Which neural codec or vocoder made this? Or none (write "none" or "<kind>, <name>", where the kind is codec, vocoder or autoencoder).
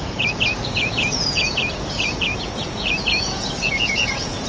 vocoder, Vocos